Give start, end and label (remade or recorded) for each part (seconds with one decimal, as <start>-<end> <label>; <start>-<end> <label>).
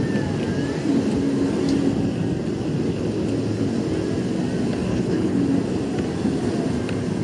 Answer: 0.0-4.9 recorded; 4.9-5.4 remade; 5.4-7.2 recorded